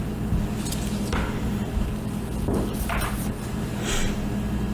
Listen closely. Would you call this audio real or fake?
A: real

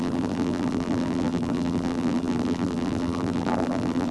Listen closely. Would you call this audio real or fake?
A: fake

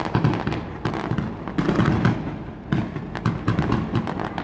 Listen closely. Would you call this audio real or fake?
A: real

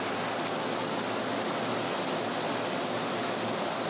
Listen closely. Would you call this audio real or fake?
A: real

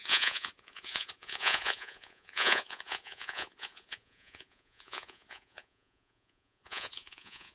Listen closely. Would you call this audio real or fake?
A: fake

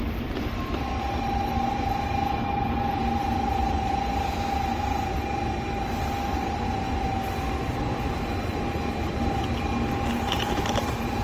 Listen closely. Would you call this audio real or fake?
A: real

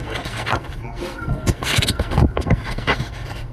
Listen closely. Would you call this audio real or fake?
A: fake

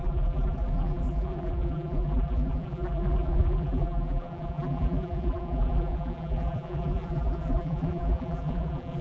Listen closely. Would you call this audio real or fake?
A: fake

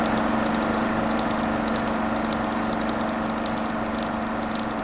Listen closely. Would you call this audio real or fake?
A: real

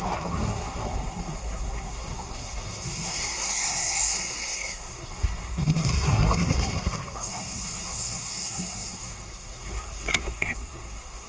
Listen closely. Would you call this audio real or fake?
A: fake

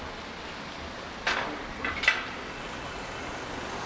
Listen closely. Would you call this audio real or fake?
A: real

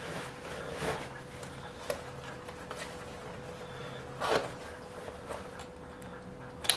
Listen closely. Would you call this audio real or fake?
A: real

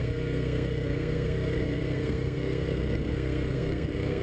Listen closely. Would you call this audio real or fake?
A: fake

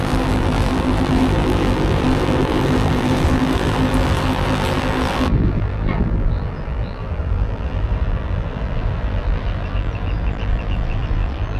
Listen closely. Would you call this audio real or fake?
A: fake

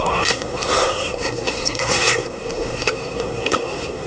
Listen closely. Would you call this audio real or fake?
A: fake